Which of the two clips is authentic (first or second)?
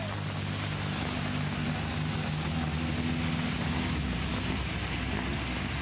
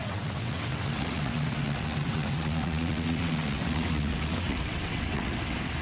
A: first